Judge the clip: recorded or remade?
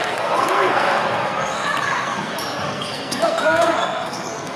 remade